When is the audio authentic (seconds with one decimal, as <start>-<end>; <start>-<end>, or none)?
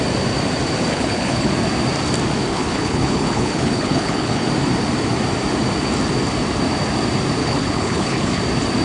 0.0-0.9; 1.5-2.5; 4.5-7.4; 8.4-8.8